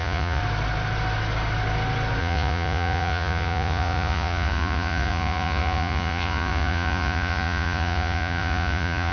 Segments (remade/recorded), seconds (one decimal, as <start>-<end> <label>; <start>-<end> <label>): 0.0-0.4 remade; 0.4-2.2 recorded; 2.2-9.1 remade